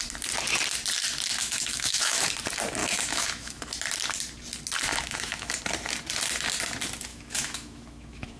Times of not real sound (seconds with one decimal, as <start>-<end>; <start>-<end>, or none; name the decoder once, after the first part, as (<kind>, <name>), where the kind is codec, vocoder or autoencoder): 1.4-2.3 (autoencoder, DAC-VAE); 2.8-3.6; 4.9-5.6; 7.1-8.4